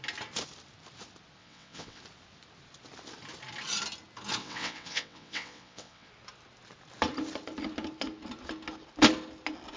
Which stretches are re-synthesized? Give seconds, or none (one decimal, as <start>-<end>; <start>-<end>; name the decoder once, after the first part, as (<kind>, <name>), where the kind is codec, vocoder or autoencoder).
1.4-2.0 (vocoder, WaveNeXt); 4.4-6.1